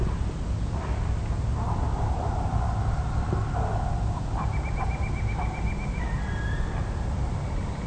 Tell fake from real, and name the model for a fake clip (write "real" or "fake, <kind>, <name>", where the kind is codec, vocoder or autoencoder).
real